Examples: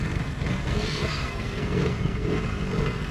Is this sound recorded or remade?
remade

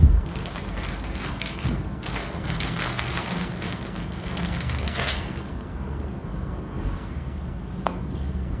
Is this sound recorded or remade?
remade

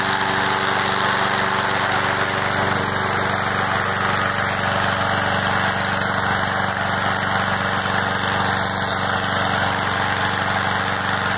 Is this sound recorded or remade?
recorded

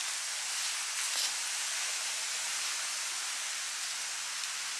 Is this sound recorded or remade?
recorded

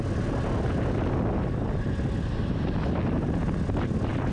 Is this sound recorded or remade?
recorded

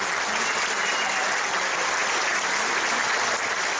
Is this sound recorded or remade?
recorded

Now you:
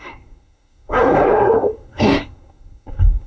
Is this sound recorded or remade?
remade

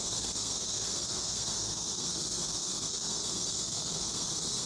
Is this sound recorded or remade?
remade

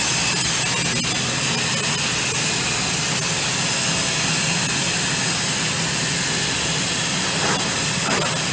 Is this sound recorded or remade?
recorded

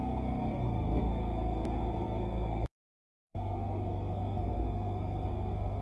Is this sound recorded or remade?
remade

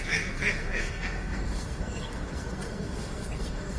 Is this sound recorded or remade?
remade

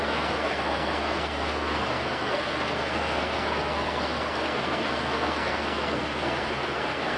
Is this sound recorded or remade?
remade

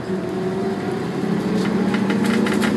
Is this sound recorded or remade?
recorded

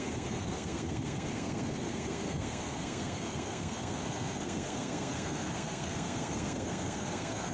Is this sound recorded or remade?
remade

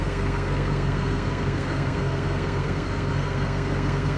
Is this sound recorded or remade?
remade